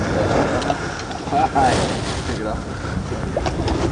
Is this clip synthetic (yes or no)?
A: no